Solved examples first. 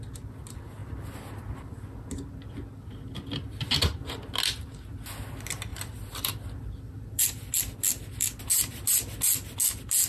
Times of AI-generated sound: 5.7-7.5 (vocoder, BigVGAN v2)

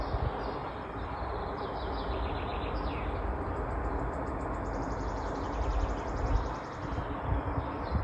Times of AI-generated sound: 0.6-1.3 (vocoder, BigVGAN v2)

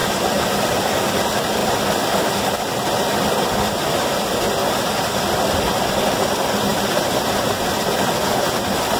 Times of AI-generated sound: 0.0-1.2 (vocoder, BigVGAN v2); 6.7-7.8

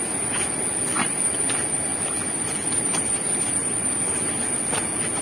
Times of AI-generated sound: none

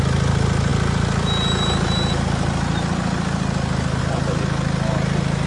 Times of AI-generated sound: none

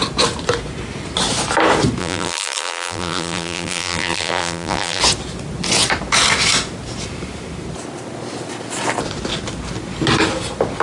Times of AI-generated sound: 2.0-5.0 (vocoder, BigVGAN v2)